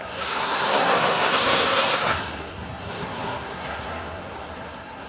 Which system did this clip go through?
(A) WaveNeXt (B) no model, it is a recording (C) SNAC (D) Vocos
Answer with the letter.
C